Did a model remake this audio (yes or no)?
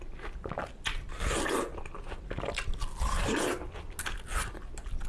no